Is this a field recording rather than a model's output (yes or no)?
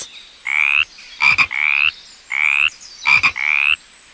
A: yes